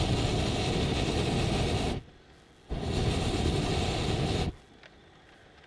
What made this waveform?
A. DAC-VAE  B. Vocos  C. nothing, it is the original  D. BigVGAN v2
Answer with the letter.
C